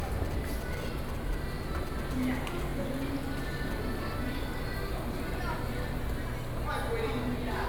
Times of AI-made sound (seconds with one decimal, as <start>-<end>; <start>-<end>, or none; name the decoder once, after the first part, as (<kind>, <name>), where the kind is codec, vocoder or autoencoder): none